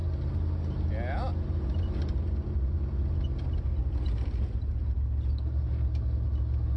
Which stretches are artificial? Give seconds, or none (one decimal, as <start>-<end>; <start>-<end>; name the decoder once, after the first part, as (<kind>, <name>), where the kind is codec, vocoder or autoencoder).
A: 3.8-4.7 (vocoder, BigVGAN v2)